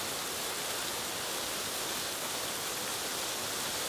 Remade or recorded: recorded